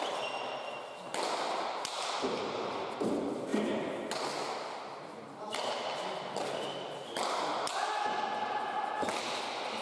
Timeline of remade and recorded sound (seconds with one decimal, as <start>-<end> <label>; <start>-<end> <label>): 0.0-9.8 recorded